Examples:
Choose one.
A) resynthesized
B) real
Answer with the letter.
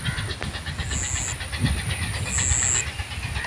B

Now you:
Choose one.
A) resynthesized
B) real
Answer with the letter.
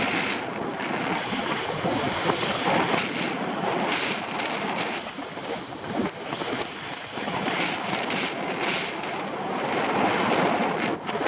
B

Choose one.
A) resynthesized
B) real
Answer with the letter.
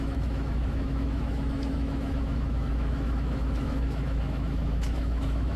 A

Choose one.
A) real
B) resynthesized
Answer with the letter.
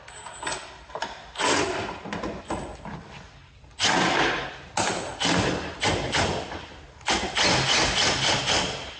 A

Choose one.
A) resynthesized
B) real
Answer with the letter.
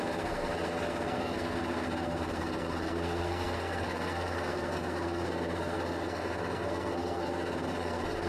A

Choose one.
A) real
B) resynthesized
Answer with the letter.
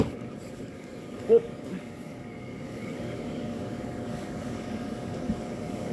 B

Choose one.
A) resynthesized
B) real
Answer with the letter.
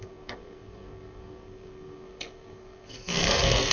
A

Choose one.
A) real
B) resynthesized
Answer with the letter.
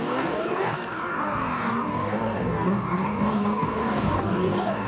B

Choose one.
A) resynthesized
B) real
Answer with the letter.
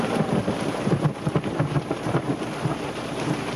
A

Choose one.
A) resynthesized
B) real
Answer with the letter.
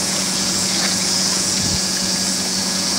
A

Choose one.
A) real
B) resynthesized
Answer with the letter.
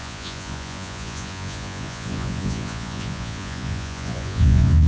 B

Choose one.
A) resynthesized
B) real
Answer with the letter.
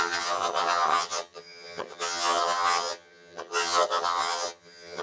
A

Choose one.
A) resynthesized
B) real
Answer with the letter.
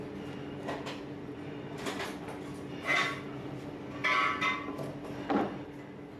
B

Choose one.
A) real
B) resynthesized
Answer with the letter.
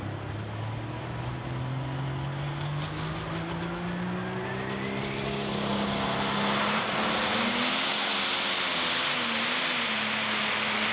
A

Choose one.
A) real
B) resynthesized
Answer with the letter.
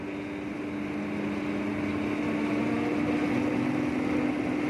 A